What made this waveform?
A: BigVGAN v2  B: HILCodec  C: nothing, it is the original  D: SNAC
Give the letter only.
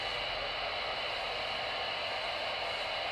C